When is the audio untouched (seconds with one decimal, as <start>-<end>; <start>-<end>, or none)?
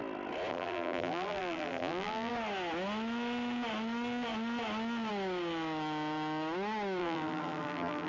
0.0-0.5; 2.3-7.0